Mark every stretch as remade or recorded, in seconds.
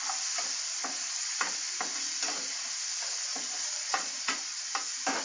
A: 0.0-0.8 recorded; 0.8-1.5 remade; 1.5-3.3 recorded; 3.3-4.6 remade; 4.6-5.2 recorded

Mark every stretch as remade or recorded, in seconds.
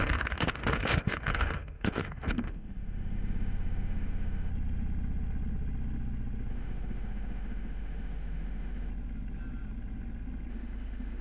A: 0.0-4.5 remade; 4.5-6.5 recorded; 6.5-8.9 remade; 8.9-10.5 recorded; 10.5-11.2 remade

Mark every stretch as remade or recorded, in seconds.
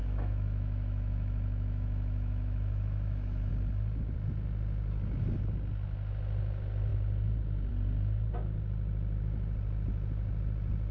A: 0.0-3.5 remade; 3.5-10.9 recorded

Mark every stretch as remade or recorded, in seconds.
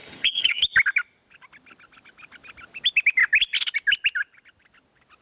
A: 0.0-0.6 remade; 0.6-5.2 recorded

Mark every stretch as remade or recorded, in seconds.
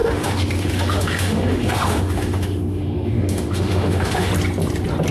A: 0.0-4.3 remade; 4.3-5.1 recorded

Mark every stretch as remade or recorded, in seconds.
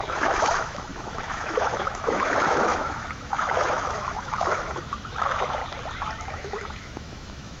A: 0.0-5.6 remade; 5.6-6.3 recorded; 6.3-7.6 remade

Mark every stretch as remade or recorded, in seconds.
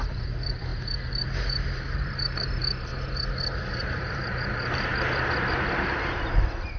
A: 0.0-2.9 remade; 2.9-3.7 recorded; 3.7-4.9 remade; 4.9-5.5 recorded; 5.5-6.8 remade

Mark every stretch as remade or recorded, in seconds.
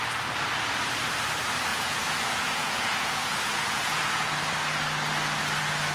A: 0.0-1.7 recorded; 1.7-4.4 remade; 4.4-5.9 recorded